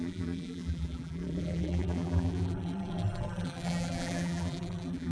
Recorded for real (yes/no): no